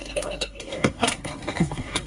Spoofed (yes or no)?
yes